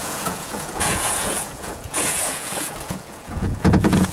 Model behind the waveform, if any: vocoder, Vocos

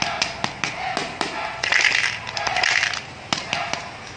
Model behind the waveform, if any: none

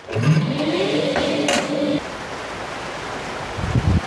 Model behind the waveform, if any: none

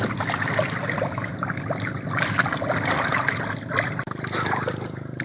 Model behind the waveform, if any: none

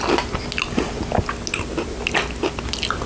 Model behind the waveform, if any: none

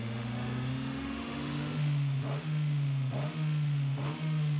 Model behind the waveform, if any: autoencoder, DAC-VAE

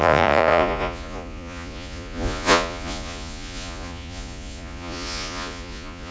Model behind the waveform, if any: vocoder, Vocos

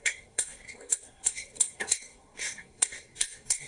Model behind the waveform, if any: codec, SNAC